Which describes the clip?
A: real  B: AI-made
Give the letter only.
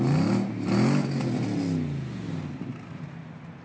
A